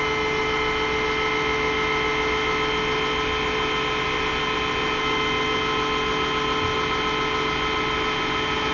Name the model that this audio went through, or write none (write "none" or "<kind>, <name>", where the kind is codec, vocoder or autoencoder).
none